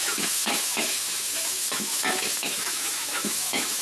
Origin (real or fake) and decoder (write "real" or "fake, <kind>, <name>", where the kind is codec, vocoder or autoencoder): fake, autoencoder, DAC-VAE